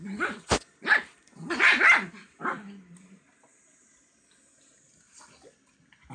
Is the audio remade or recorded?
recorded